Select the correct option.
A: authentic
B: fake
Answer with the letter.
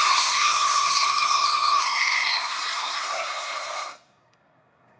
B